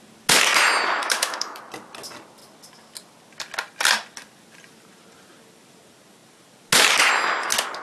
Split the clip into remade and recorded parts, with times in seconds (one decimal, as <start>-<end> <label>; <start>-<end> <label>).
0.0-1.0 recorded; 1.0-1.6 remade; 1.6-7.8 recorded